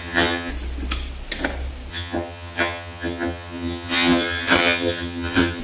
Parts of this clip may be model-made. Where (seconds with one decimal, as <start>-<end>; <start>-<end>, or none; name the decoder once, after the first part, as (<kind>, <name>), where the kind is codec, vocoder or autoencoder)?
0.0-0.5 (vocoder, HiFi-GAN); 1.9-5.6